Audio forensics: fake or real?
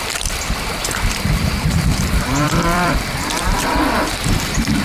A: fake